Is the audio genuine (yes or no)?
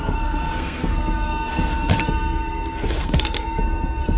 no